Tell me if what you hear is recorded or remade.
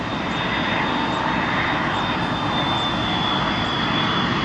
recorded